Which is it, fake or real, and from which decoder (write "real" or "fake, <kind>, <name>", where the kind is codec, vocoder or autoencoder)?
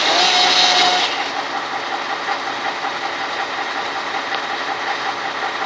real